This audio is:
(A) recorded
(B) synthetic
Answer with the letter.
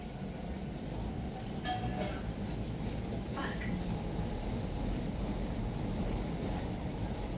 A